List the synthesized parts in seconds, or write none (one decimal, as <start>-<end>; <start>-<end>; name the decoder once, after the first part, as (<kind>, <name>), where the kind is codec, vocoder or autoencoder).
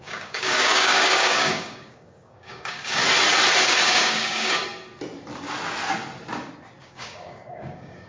0.0-3.0 (codec, DAC); 3.6-4.6; 6.8-8.1